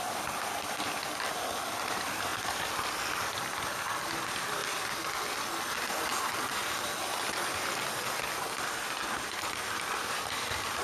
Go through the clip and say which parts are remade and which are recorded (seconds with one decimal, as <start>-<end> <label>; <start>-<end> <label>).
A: 0.0-4.6 remade; 4.6-9.1 recorded; 9.1-10.8 remade